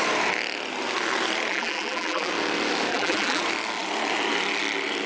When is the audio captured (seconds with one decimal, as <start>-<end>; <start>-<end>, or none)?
0.0-1.5; 2.3-2.9; 3.4-5.1